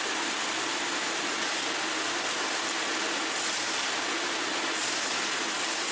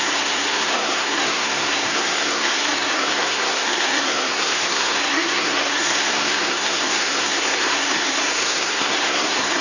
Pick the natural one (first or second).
first